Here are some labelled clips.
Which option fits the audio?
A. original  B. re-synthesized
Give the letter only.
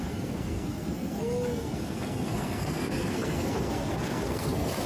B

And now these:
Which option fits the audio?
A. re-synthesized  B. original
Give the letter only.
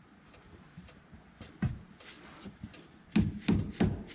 B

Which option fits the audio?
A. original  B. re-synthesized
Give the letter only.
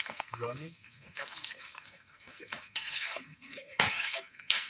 B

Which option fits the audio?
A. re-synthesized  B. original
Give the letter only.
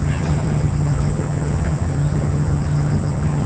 A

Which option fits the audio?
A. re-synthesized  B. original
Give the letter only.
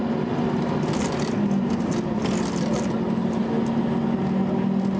B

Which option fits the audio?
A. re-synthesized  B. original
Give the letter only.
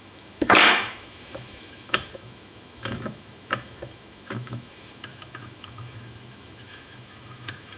A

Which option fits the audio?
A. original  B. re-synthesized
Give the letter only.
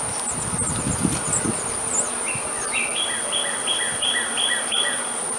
A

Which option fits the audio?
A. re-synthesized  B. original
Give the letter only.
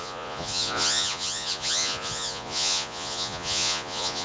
A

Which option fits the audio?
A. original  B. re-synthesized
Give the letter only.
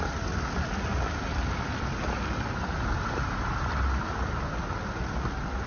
A